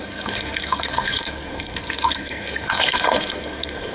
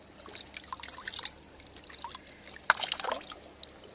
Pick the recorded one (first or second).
second